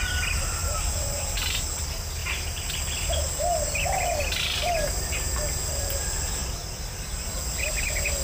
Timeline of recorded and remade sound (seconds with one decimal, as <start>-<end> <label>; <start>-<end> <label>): 0.0-0.6 recorded; 0.6-1.6 remade; 1.6-2.2 recorded; 2.2-2.7 remade; 2.7-8.2 recorded